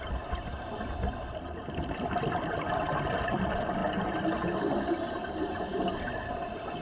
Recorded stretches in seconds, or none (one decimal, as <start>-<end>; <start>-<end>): 0.0-6.8